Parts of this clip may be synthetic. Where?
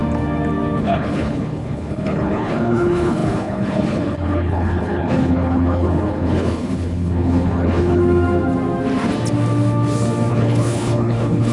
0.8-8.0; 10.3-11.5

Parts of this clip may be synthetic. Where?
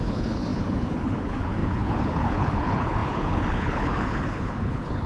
0.0-5.1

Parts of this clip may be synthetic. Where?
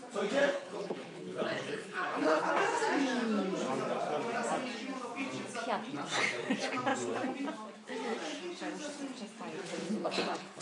0.4-2.5; 9.8-10.6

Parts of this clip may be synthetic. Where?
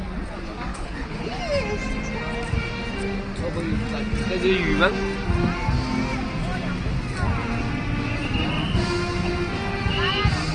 0.7-1.4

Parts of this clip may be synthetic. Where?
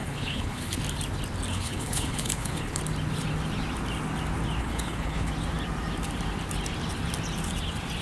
0.0-0.8; 1.5-2.8; 4.6-5.3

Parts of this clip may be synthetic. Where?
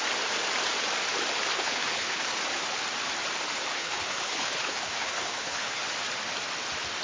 1.5-2.2; 3.7-5.8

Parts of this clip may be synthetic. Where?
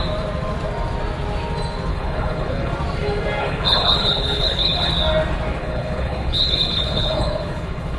1.9-2.7; 3.4-4.9; 5.6-8.0